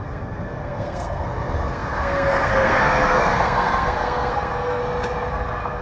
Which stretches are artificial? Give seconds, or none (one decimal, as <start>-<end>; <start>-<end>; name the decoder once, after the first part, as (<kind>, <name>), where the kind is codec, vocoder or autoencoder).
0.0-4.8 (codec, SNAC); 5.3-5.8